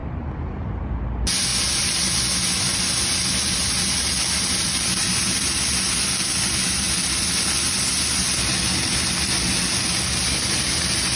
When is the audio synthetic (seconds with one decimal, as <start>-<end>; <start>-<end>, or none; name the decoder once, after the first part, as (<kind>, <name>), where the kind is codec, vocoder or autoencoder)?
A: none